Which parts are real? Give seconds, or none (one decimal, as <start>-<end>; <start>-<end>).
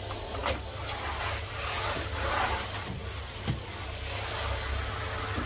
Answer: 0.0-5.5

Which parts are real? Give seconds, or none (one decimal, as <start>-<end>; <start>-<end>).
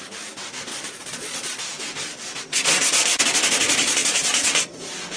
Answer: 0.0-0.7; 1.6-3.8; 4.7-5.2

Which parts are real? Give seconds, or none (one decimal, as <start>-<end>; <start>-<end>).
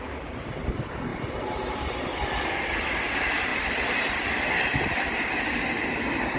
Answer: 0.0-6.4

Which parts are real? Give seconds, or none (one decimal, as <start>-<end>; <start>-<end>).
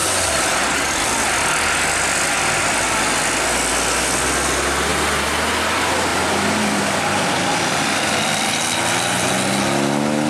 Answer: 3.7-6.1; 9.3-10.3